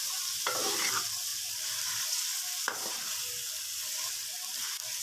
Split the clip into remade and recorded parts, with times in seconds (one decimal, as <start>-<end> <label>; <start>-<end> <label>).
0.0-1.3 recorded; 1.3-3.1 remade; 3.1-5.0 recorded